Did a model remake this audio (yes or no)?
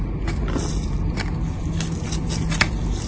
no